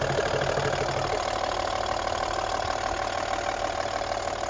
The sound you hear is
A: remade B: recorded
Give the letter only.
B